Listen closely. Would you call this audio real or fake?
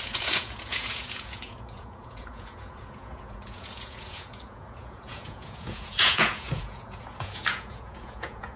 fake